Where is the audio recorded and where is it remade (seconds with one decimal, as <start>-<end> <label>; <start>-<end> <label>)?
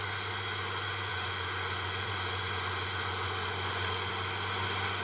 0.0-1.1 recorded; 1.1-4.1 remade; 4.1-5.0 recorded